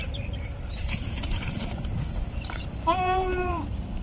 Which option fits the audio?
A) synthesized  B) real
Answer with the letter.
A